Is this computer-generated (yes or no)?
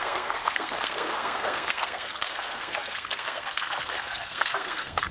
yes